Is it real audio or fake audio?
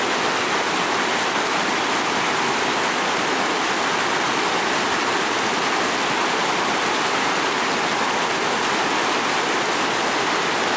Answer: real